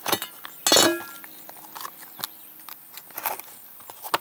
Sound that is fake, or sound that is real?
real